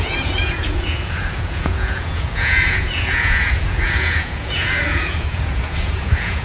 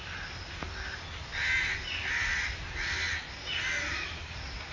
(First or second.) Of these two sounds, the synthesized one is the first